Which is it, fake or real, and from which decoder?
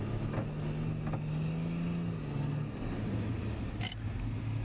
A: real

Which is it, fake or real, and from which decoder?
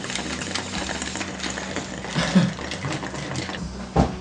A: real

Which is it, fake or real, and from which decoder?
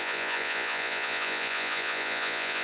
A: fake, vocoder, Vocos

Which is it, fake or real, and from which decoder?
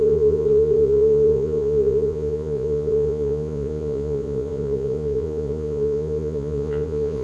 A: fake, vocoder, Vocos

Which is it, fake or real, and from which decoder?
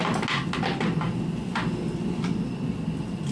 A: real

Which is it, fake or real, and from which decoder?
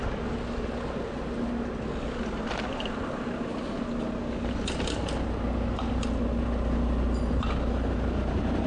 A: real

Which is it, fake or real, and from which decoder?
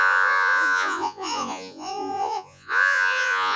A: fake, vocoder, Vocos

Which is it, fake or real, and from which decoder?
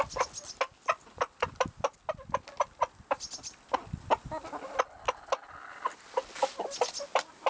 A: real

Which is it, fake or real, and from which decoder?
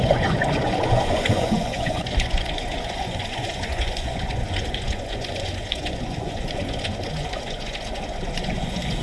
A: fake, vocoder, Vocos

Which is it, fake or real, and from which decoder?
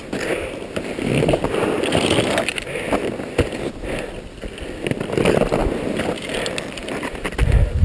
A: real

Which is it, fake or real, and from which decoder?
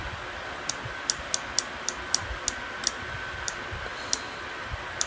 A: real